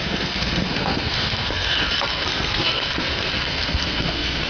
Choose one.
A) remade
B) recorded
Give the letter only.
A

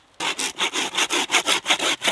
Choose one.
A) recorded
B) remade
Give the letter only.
A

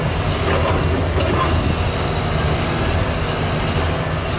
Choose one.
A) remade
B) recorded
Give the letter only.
B